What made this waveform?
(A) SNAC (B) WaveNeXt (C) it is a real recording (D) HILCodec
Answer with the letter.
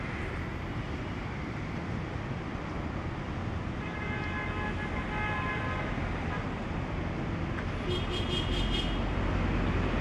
C